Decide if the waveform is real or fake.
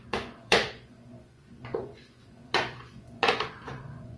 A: fake